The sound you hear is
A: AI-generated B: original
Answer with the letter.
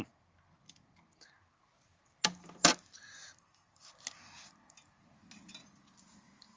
B